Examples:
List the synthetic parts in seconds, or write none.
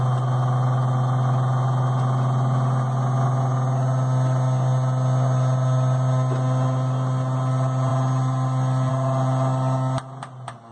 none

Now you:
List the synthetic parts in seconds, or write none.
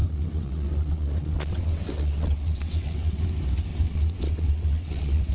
0.0-3.2 (vocoder, WaveNeXt); 3.7-5.3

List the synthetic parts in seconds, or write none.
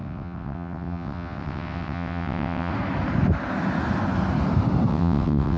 0.0-2.7 (vocoder, WaveNeXt); 4.9-5.6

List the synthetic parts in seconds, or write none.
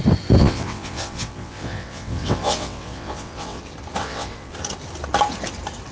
0.4-3.6 (vocoder, WaveNeXt); 4.0-4.5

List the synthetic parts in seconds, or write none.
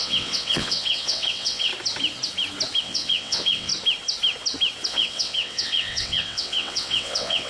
0.0-1.7 (vocoder, WaveNeXt); 2.8-3.7; 4.9-7.5